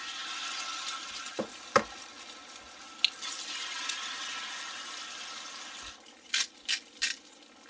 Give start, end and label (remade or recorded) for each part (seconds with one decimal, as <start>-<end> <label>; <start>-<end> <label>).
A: 0.0-7.7 recorded